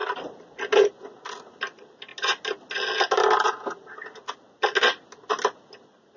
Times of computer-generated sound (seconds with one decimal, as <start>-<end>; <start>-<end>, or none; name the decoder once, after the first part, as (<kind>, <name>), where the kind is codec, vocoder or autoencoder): none